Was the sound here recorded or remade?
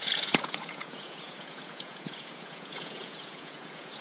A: remade